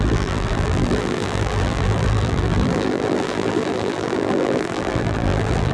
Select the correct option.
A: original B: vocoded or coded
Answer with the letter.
B